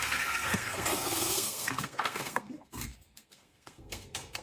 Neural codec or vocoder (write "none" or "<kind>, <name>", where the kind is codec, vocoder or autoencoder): codec, SNAC